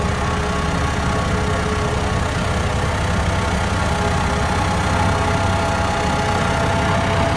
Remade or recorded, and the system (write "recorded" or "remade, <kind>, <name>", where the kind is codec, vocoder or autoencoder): recorded